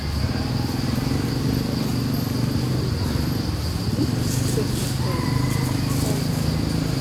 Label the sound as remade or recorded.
recorded